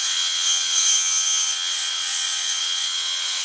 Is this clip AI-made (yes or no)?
yes